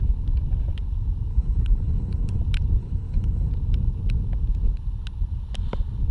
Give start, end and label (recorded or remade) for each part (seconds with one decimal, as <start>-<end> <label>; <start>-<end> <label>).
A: 0.0-1.3 recorded; 1.3-2.4 remade; 2.4-2.8 recorded; 2.8-3.5 remade; 3.5-6.1 recorded